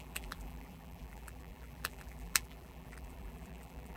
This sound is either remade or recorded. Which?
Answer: remade